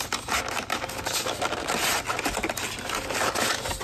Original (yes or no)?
yes